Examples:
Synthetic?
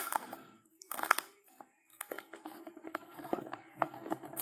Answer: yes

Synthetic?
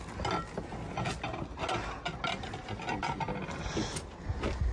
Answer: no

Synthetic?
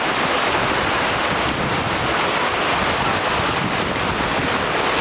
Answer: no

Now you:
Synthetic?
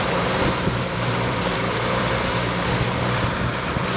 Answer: yes